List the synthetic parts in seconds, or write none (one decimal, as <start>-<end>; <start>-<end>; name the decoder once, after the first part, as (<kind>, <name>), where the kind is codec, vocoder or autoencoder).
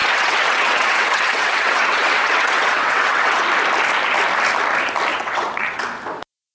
0.0-3.4 (vocoder, WaveNeXt); 5.1-5.8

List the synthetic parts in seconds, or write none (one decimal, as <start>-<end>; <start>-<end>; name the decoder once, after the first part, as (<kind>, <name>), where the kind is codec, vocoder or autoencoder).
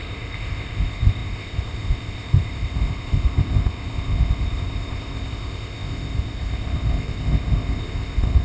0.0-8.4 (codec, ZipCodec)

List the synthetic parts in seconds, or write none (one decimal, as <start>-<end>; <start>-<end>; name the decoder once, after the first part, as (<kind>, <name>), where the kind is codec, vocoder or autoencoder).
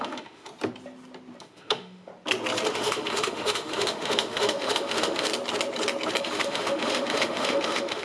0.0-0.5 (autoencoder, DAC-VAE); 1.4-2.1; 2.7-5.3; 6.2-8.0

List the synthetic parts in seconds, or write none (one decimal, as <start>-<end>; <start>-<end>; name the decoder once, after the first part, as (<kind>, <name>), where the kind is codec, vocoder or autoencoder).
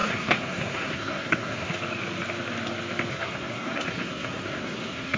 0.0-1.7 (codec, SNAC); 3.1-5.2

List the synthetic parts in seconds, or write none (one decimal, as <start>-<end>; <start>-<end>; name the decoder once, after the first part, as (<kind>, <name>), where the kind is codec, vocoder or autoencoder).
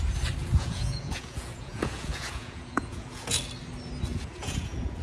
0.4-3.4 (vocoder, Vocos); 4.1-5.0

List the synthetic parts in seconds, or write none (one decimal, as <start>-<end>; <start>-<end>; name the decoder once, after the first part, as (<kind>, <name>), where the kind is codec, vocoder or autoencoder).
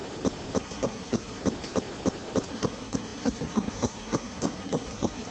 0.6-1.4 (codec, SNAC); 2.5-5.3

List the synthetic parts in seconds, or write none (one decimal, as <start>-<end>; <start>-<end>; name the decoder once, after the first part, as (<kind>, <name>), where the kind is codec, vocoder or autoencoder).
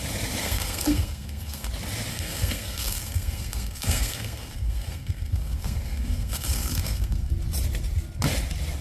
0.4-1.7 (codec, SNAC); 2.1-7.3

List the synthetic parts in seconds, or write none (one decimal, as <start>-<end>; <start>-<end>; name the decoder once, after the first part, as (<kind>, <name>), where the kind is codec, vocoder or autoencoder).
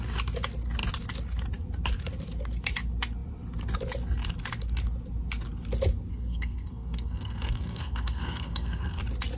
6.1-9.0 (codec, SNAC)